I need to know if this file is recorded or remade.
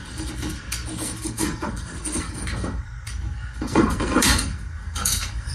remade